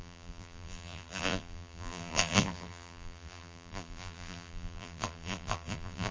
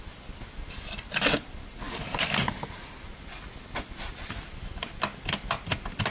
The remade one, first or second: first